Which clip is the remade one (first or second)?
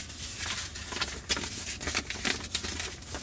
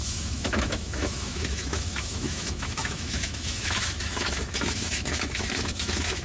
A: second